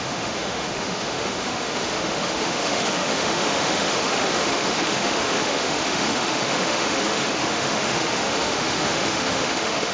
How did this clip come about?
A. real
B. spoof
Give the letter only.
B